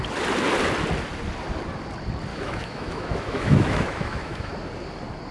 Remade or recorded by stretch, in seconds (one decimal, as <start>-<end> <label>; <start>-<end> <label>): 0.0-2.3 recorded; 2.3-4.5 remade; 4.5-5.3 recorded